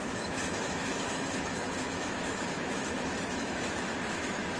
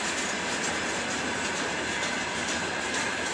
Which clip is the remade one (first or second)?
first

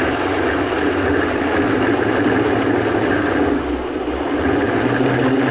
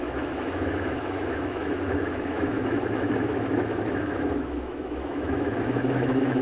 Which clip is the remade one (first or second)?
second